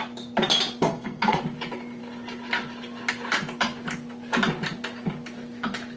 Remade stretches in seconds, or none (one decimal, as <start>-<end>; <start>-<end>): 0.9-1.4